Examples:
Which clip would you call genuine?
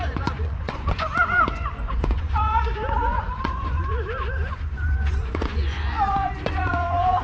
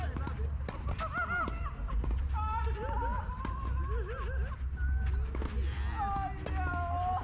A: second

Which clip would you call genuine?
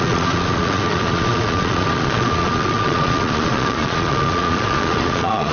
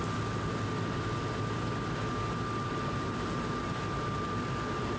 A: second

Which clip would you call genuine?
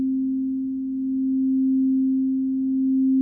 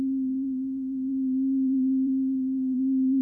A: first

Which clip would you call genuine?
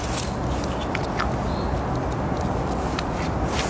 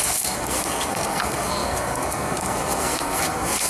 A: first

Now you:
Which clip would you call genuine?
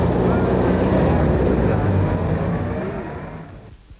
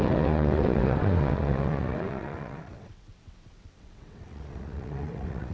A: first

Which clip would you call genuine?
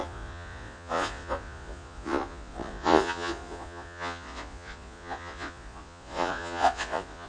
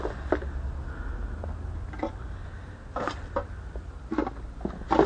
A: second